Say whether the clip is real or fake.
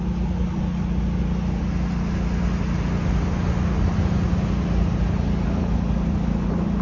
real